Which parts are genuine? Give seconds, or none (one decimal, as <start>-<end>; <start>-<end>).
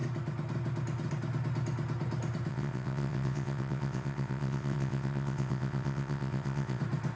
0.0-2.5; 6.8-7.2